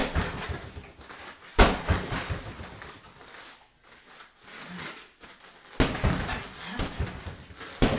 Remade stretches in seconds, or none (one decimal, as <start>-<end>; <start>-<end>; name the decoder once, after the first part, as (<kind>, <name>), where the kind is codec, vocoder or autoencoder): 0.0-0.8 (vocoder, BigVGAN v2)